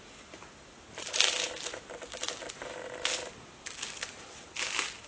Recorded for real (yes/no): yes